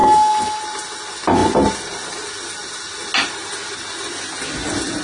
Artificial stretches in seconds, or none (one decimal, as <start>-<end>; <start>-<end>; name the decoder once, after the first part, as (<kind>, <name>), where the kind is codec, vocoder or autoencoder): 0.0-0.6 (autoencoder, DAC-VAE)